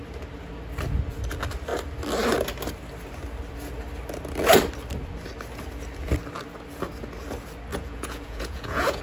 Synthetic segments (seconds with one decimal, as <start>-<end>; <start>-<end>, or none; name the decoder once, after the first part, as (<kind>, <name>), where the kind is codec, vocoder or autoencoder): 7.7-9.0 (vocoder, Vocos)